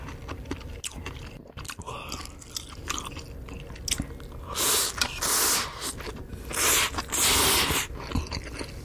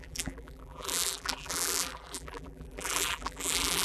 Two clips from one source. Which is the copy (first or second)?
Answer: second